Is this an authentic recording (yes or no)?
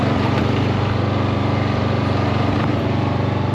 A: no